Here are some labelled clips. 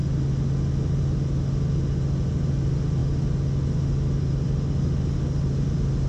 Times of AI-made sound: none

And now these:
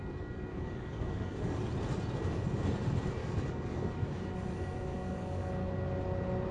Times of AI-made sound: 0.5-1.7; 3.2-5.5

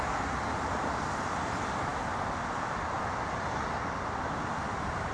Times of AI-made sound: none

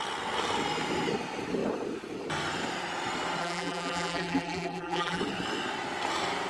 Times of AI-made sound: 3.4-5.2

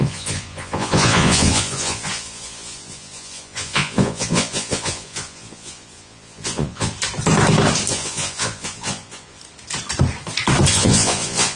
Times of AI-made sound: 0.0-6.9; 7.9-9.4; 10.7-11.6

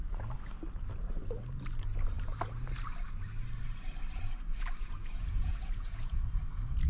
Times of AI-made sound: 4.8-6.3